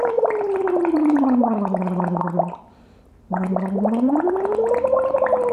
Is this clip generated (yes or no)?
no